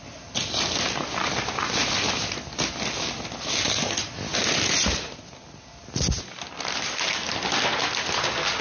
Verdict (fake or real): real